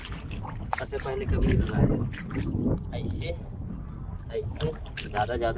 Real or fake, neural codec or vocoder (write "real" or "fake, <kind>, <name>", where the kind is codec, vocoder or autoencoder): real